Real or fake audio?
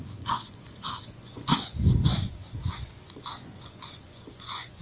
fake